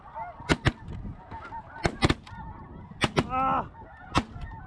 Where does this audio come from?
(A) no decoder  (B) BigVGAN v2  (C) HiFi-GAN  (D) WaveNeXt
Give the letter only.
A